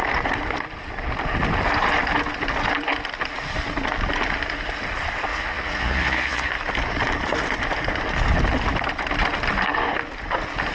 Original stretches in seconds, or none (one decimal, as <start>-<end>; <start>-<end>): 0.0-5.3; 6.5-10.7

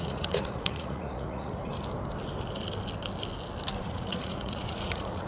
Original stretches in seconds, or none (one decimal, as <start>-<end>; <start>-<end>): 1.7-3.8